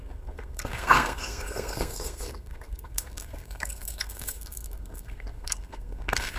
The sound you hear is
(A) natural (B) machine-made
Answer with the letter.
B